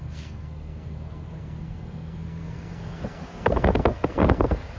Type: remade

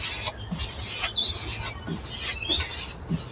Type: recorded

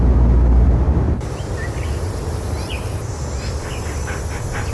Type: recorded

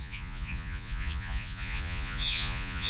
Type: remade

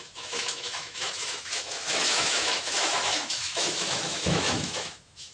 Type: remade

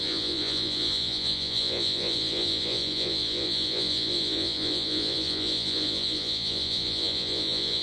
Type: remade